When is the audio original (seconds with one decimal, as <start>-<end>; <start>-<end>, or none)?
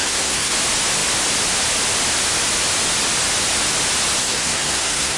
0.5-4.2